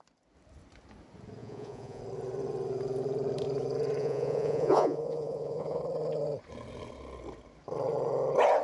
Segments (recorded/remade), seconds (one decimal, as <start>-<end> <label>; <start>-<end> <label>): 0.0-1.4 recorded; 1.4-2.0 remade; 2.0-4.0 recorded; 4.0-5.8 remade; 5.8-8.6 recorded